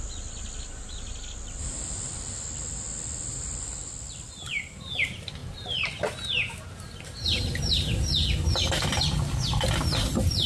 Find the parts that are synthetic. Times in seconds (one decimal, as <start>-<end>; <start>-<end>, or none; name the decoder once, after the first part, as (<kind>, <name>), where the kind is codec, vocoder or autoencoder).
none